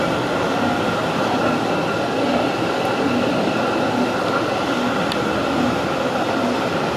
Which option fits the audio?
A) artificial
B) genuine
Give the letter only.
B